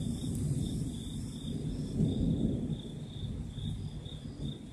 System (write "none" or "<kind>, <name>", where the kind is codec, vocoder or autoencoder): none